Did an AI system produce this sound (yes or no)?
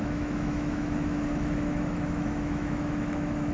yes